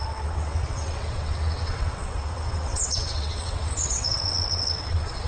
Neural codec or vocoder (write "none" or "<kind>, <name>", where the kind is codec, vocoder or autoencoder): vocoder, WaveNeXt